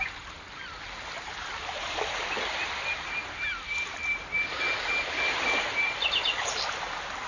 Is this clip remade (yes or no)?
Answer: no